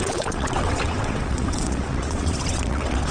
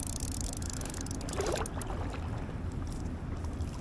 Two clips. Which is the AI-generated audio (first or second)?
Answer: first